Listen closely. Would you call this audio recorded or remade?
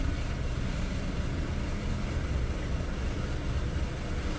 recorded